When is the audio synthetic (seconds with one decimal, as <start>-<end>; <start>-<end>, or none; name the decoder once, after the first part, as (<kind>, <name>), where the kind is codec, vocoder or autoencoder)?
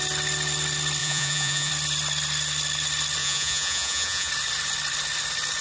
1.0-1.7 (vocoder, Vocos); 3.2-4.3